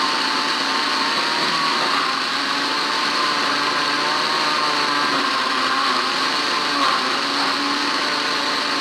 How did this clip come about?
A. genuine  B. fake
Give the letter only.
A